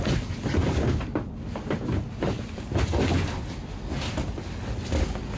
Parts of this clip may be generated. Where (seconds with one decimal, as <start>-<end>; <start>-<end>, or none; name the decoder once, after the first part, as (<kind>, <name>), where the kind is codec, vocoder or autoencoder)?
none